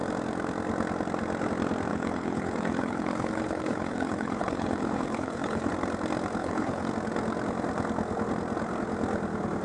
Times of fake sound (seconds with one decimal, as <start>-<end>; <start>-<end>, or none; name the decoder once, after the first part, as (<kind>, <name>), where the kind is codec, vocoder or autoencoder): 1.9-5.7 (codec, HILCodec); 6.4-6.9